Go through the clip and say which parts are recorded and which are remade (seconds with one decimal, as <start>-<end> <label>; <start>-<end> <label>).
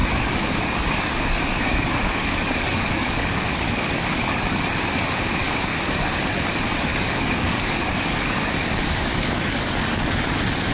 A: 0.0-4.4 remade; 4.4-5.4 recorded; 5.4-6.2 remade; 6.2-6.9 recorded; 6.9-10.1 remade; 10.1-10.7 recorded